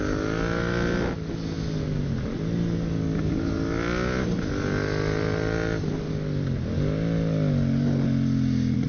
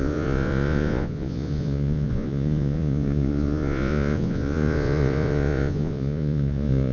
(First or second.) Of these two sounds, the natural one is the first